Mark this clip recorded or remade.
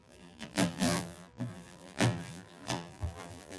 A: remade